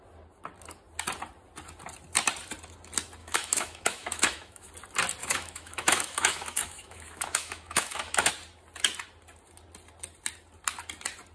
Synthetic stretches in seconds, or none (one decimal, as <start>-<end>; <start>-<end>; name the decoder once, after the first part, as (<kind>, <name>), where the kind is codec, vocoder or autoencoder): 3.2-4.7 (autoencoder, DAC-VAE); 5.2-8.3